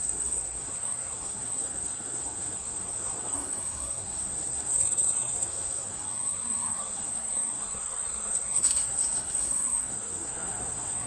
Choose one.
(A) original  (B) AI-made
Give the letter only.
B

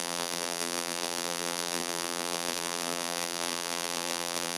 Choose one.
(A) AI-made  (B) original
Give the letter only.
A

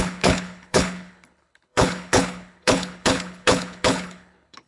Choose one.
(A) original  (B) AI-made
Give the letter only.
B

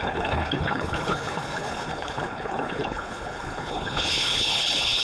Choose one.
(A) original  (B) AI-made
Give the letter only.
B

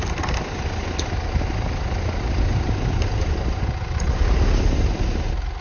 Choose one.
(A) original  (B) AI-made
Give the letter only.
A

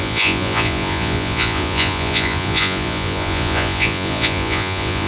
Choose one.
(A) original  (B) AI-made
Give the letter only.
B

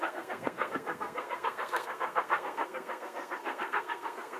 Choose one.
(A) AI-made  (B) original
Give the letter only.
A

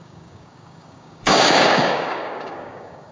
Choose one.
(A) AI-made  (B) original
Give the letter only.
A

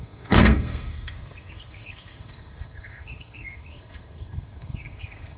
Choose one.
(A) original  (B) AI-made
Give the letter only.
B